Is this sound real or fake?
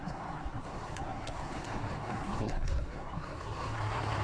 fake